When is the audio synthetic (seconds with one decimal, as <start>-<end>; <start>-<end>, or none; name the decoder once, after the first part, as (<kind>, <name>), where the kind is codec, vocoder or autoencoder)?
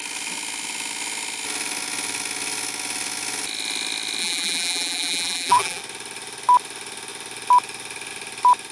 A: 4.2-5.8 (vocoder, BigVGAN v2)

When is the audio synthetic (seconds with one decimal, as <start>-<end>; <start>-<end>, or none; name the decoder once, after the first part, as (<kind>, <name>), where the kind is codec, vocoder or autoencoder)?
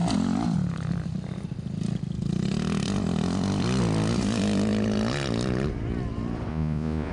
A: 6.5-7.1 (vocoder, Vocos)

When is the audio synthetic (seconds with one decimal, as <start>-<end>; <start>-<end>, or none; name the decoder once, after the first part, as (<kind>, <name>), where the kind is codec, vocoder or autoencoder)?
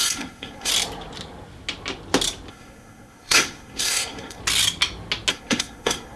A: 0.0-0.7 (codec, SNAC); 2.5-4.4; 5.3-6.2